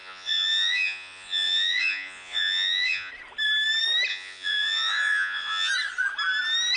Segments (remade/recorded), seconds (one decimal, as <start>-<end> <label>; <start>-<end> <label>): 0.0-3.1 remade; 3.1-4.1 recorded; 4.1-5.7 remade; 5.7-6.8 recorded